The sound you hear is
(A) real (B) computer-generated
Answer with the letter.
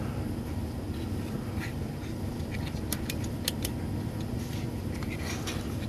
A